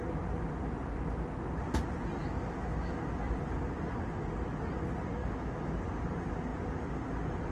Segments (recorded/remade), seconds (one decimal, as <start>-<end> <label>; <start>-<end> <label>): 0.0-2.2 recorded; 2.2-3.0 remade; 3.0-5.2 recorded; 5.2-5.8 remade; 5.8-7.5 recorded

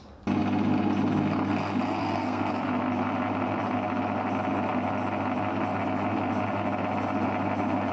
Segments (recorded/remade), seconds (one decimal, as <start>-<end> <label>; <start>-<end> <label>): 0.0-2.0 recorded; 2.0-2.5 remade; 2.5-7.9 recorded